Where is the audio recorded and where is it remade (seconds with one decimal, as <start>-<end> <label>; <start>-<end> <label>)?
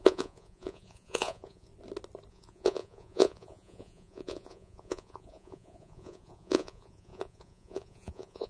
0.0-1.7 remade; 1.7-2.3 recorded; 2.3-8.5 remade